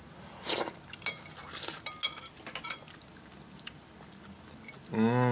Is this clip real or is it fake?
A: real